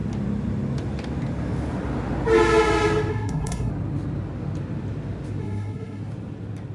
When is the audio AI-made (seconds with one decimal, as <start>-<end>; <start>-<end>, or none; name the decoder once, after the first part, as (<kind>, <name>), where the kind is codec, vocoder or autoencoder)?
3.1-3.7 (codec, SNAC); 5.4-6.0